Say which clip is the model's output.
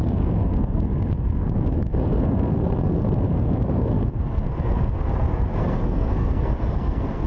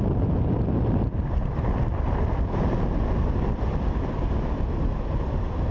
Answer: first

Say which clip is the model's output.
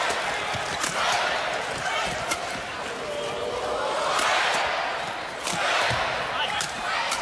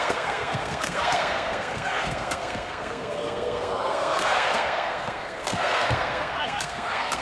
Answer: second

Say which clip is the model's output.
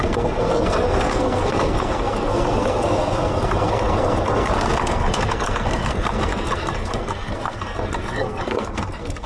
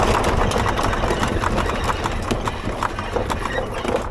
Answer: first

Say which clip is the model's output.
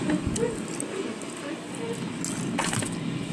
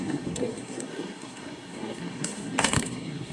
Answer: second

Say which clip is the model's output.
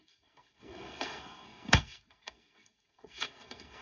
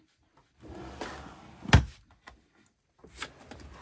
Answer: first